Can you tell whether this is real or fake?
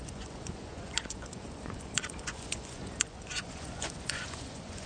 fake